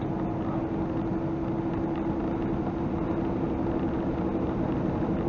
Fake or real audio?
real